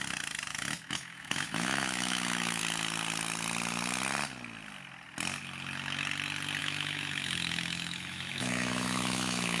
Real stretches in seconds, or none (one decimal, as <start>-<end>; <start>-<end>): 0.0-0.5; 2.6-6.6